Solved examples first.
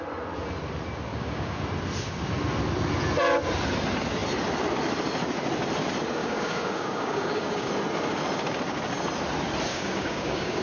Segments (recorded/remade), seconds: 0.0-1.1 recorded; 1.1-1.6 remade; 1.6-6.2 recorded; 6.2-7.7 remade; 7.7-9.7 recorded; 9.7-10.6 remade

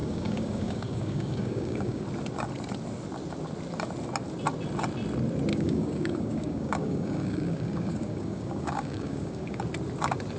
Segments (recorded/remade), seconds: 0.0-2.0 remade; 2.0-5.5 recorded; 5.5-9.6 remade; 9.6-10.4 recorded

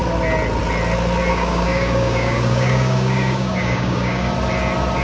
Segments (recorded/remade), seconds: 0.0-1.3 recorded; 1.3-4.3 remade; 4.3-5.0 recorded

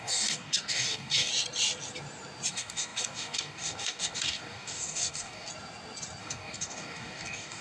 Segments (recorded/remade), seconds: 0.0-1.3 remade; 1.3-2.5 recorded; 2.5-5.5 remade; 5.5-6.2 recorded; 6.2-7.6 remade

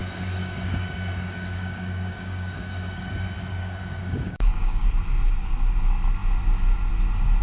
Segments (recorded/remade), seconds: 0.0-3.1 remade; 3.1-3.6 recorded; 3.6-4.9 remade; 4.9-7.4 recorded

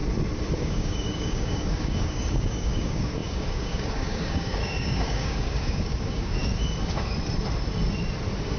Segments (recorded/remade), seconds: 0.0-0.5 recorded; 0.5-6.4 remade; 6.4-8.6 recorded

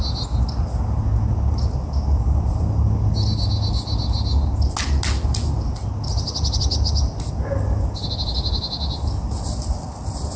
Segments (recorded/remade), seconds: 0.0-10.4 recorded

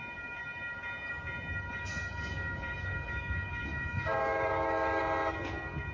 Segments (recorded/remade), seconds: 0.0-1.7 recorded; 1.7-5.0 remade; 5.0-5.9 recorded